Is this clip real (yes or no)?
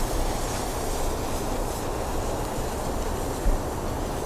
yes